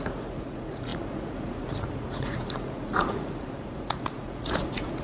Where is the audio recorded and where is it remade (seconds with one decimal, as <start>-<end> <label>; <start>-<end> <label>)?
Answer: 0.0-5.0 remade